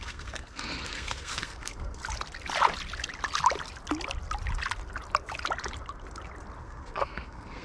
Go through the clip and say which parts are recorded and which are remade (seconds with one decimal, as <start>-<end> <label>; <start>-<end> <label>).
0.0-2.0 remade; 2.0-6.6 recorded; 6.6-7.6 remade